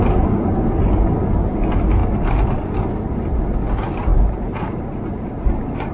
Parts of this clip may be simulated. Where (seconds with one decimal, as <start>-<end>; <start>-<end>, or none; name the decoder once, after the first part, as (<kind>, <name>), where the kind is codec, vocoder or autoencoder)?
4.1-5.4 (vocoder, BigVGAN v2)